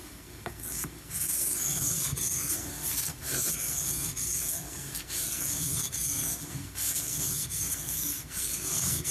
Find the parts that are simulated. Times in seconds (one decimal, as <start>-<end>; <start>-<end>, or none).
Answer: 0.0-9.1